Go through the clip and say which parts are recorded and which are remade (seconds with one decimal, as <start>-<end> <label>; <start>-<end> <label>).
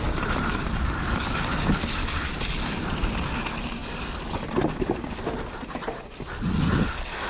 0.0-0.5 recorded; 0.5-1.9 remade; 1.9-3.8 recorded; 3.8-4.4 remade; 4.4-7.3 recorded